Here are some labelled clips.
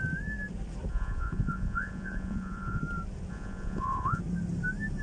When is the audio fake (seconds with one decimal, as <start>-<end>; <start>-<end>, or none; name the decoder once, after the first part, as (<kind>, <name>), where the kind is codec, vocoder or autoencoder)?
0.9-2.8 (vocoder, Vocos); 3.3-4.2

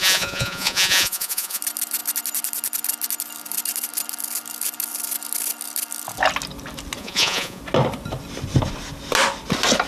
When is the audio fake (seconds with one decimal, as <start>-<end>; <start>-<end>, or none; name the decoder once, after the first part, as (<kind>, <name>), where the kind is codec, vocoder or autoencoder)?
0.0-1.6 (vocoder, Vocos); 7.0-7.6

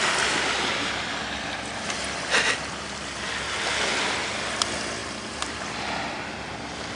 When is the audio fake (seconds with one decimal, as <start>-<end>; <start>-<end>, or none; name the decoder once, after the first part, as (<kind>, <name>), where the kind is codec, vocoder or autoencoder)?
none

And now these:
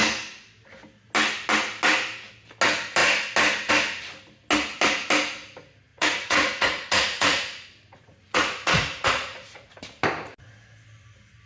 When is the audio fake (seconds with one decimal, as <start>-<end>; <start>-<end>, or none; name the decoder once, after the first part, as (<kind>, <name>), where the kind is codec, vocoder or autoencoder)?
5.9-9.8 (vocoder, Vocos)